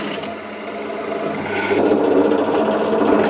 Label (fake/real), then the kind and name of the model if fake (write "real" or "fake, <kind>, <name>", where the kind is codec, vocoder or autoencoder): real